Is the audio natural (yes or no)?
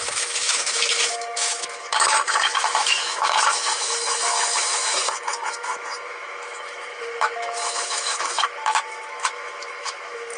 no